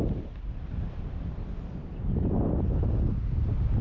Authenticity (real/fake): real